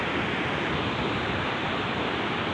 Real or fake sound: real